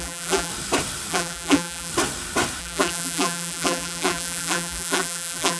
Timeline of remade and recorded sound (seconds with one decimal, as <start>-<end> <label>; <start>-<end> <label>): 0.0-0.5 remade; 0.5-1.1 recorded; 1.1-1.9 remade; 1.9-2.6 recorded; 2.6-5.6 remade